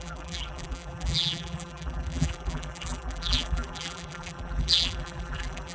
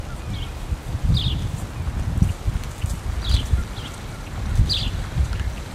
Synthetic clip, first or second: first